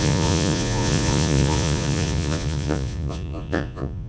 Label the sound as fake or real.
fake